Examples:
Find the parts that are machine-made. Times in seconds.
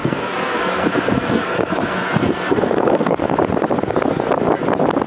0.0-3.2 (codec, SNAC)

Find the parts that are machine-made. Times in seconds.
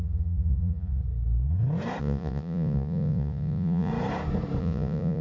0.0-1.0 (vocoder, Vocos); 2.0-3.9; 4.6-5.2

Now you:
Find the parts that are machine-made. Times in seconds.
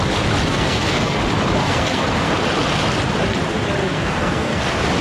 0.5-1.2 (codec, SNAC); 1.6-2.3; 3.8-4.6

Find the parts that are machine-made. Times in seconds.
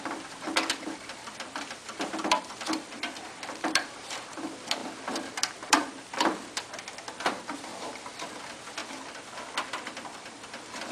0.0-4.8 (vocoder, BigVGAN v2); 5.4-10.9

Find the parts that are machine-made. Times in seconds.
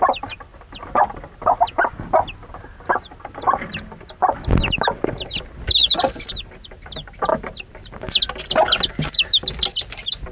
none